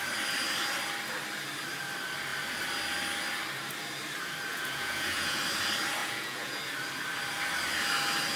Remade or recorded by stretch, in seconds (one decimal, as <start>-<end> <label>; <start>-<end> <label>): 0.0-4.5 recorded; 4.5-5.4 remade; 5.4-6.0 recorded; 6.0-6.6 remade; 6.6-8.4 recorded